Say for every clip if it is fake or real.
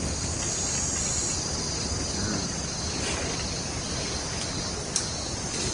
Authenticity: real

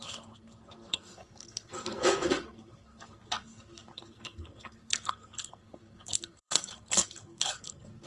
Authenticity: fake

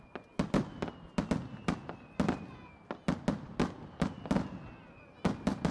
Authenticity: real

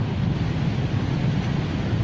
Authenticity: real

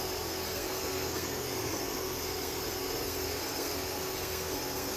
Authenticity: fake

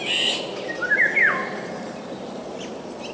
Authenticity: real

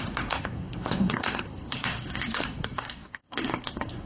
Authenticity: fake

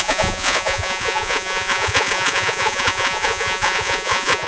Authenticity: fake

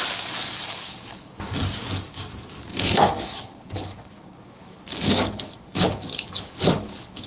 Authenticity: fake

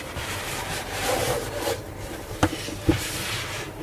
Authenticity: fake